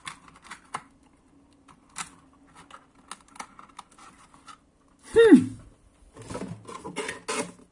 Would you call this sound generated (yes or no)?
no